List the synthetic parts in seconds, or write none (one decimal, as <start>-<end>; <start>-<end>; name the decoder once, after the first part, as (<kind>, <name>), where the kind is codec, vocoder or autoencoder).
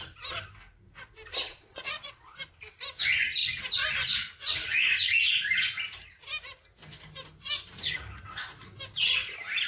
1.5-2.4 (vocoder, Vocos)